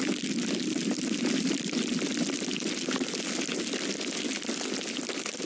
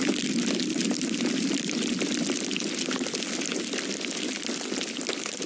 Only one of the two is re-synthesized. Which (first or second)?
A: second